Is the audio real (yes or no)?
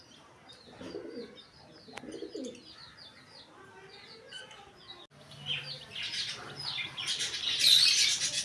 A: yes